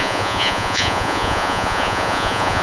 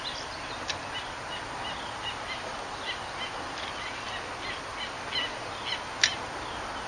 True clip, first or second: second